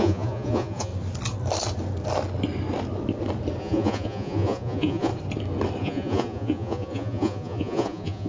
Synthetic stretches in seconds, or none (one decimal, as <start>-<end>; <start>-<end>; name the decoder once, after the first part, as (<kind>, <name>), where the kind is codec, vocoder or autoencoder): 0.0-0.9 (vocoder, Vocos); 3.6-5.1; 5.8-8.3